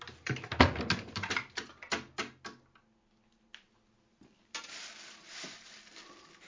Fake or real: real